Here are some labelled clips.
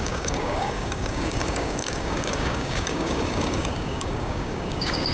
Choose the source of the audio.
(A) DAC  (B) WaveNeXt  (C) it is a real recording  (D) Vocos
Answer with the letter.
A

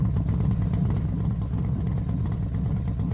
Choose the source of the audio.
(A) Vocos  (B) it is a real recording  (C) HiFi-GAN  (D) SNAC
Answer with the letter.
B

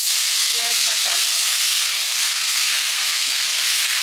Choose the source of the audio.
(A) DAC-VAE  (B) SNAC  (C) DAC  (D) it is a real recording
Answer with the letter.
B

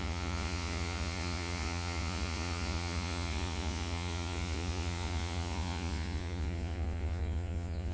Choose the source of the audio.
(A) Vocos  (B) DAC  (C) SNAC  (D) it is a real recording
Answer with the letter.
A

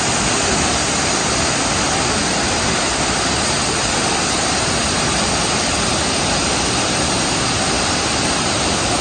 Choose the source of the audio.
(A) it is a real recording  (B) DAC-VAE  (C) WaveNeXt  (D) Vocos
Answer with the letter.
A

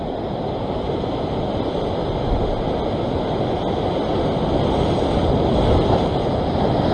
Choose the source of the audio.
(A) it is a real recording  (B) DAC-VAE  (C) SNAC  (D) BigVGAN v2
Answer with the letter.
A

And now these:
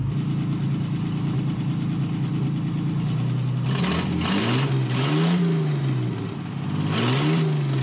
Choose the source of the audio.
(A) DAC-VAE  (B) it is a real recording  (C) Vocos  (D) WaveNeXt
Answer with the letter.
B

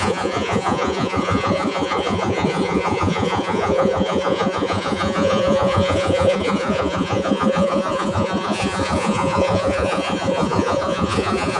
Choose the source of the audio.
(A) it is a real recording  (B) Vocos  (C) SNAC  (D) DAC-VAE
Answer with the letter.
B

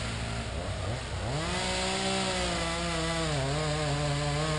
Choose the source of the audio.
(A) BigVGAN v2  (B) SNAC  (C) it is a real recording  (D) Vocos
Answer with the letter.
C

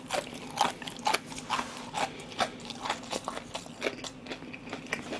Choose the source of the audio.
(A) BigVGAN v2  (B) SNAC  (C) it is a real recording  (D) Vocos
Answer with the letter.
C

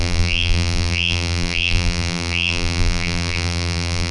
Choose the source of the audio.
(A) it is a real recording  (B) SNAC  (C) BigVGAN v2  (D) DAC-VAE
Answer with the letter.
C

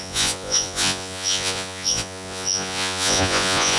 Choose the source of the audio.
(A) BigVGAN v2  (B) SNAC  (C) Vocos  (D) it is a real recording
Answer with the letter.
C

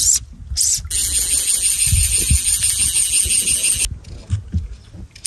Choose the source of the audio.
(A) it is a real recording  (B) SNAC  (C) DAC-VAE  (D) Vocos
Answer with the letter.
A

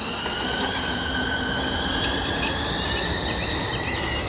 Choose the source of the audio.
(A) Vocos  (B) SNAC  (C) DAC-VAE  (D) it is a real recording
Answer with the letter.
D